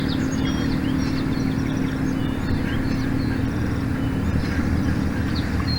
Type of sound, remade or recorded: recorded